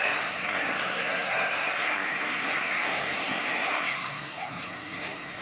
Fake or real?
fake